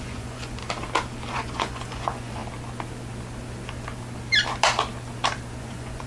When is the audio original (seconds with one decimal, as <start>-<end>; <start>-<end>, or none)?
0.6-1.3; 2.4-5.6